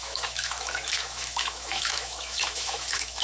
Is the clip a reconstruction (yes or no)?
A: yes